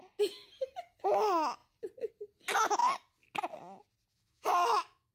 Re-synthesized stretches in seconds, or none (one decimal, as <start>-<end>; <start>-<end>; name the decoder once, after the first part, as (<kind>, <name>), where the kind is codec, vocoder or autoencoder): 4.1-5.1 (autoencoder, DAC-VAE)